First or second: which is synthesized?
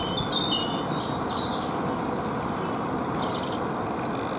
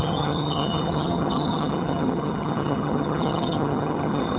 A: second